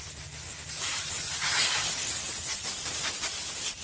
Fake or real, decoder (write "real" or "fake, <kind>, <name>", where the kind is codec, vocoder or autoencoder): real